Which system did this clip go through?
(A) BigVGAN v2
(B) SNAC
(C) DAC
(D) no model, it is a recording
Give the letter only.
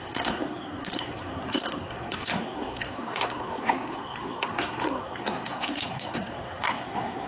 B